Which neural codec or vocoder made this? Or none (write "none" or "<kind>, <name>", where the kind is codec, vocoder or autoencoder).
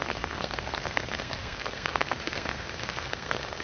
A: codec, SNAC